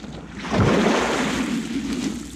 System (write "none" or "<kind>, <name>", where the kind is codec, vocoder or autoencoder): none